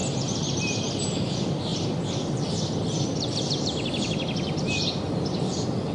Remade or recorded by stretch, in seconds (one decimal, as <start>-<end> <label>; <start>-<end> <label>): 0.0-5.9 recorded